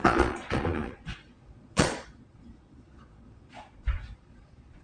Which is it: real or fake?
fake